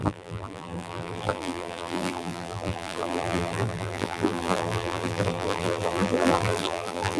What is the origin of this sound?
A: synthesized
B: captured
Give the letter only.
A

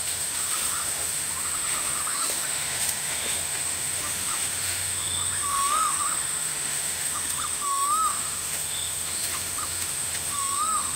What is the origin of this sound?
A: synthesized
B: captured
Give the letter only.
A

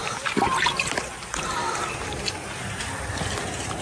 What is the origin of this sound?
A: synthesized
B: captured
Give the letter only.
B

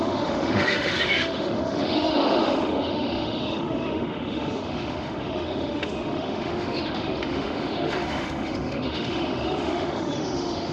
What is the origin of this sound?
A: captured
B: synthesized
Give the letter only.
B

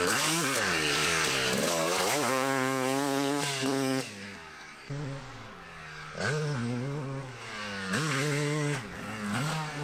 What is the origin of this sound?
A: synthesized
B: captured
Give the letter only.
A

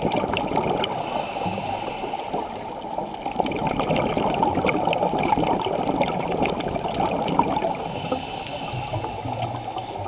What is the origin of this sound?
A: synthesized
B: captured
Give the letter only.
B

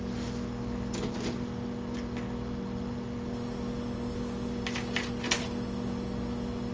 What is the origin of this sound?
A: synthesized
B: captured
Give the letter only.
B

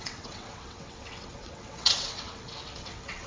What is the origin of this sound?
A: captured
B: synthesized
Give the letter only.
B